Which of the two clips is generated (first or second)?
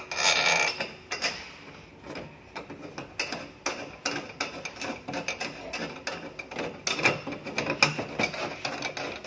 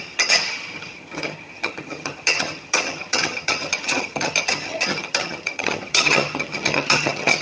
second